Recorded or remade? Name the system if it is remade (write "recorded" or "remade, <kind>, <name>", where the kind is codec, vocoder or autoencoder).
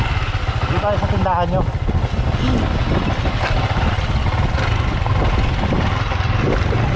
recorded